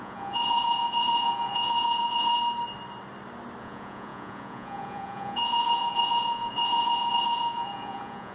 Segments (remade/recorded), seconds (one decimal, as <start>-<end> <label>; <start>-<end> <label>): 0.0-2.3 remade; 2.3-3.6 recorded; 3.6-8.3 remade